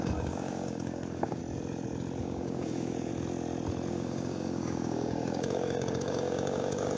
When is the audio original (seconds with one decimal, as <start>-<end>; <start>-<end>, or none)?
1.4-2.2; 3.1-3.9